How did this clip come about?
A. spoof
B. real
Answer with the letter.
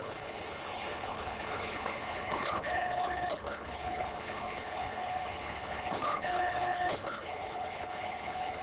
A